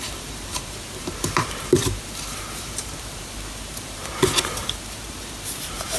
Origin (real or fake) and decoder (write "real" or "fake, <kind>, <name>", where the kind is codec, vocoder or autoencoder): fake, vocoder, BigVGAN v2